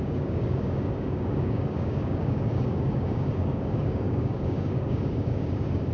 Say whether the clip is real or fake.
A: fake